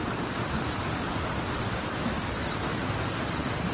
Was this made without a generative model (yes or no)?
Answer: yes